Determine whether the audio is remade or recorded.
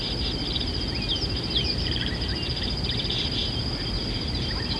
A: recorded